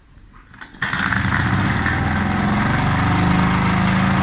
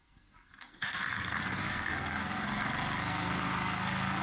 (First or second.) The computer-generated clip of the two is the second